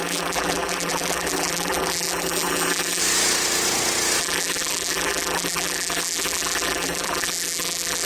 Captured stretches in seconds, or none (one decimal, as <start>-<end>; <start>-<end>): 3.0-4.2